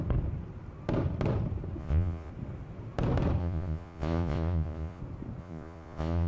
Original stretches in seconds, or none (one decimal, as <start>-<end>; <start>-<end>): 0.0-1.8; 2.3-3.4; 5.0-5.4